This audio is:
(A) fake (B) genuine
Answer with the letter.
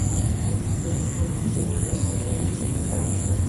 A